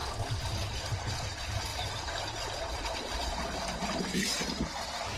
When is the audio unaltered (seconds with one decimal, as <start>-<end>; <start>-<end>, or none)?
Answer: 0.0-5.2